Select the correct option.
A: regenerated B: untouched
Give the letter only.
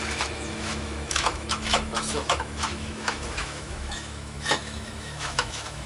A